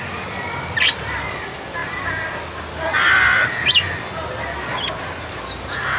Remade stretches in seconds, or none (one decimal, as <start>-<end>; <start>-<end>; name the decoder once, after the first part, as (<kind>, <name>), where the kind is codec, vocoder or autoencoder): none